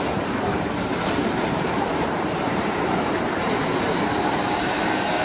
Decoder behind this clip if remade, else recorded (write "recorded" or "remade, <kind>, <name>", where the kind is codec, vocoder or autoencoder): remade, vocoder, BigVGAN v2